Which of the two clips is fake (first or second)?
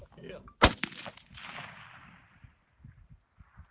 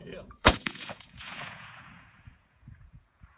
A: second